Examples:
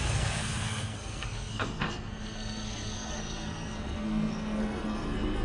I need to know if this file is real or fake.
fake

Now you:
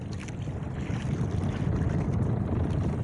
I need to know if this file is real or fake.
fake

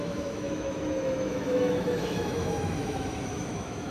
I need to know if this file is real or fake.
fake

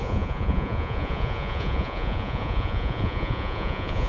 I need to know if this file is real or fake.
fake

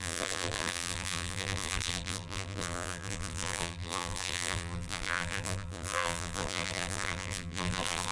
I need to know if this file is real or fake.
fake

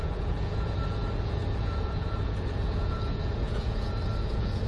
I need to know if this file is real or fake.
fake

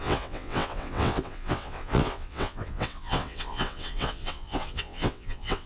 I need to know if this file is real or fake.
fake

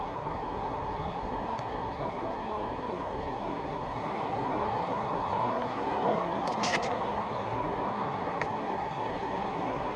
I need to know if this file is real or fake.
fake